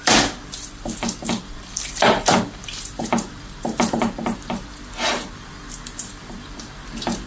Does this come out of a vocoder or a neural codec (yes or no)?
yes